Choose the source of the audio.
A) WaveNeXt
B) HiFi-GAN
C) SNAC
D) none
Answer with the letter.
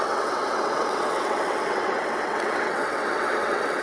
A